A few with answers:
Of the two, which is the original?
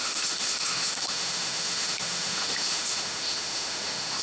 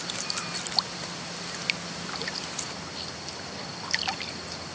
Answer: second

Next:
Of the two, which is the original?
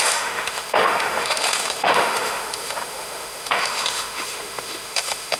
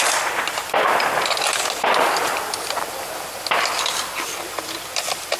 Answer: second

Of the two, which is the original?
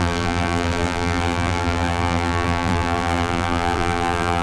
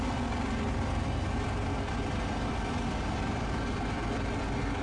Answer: second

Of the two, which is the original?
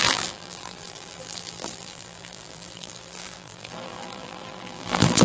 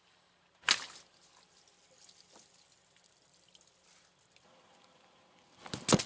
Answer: second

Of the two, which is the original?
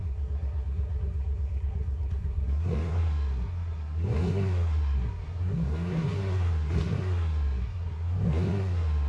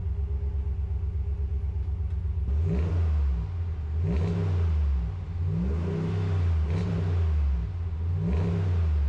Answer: second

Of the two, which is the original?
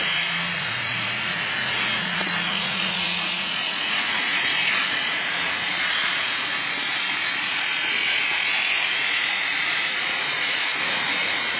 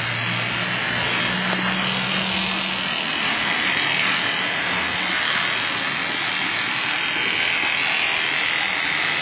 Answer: second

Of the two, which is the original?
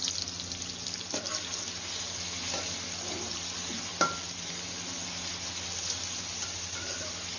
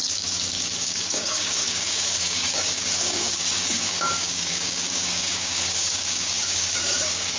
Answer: first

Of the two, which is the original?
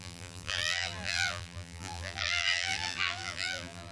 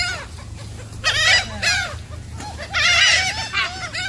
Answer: second